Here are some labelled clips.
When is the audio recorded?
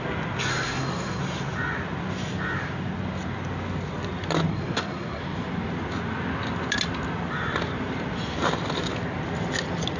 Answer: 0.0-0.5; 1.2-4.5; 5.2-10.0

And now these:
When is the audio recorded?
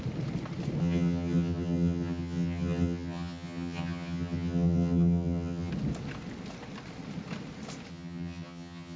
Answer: 0.0-0.8; 5.7-7.9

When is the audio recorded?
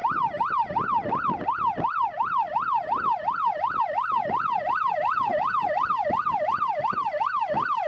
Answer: 0.0-3.8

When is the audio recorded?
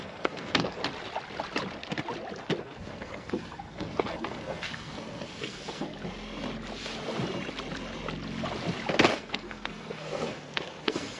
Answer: 0.8-2.6; 5.9-9.1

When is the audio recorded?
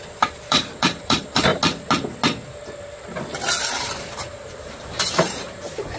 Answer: 1.5-3.7